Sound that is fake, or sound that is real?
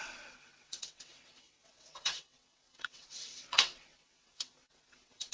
fake